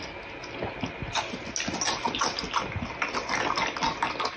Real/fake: real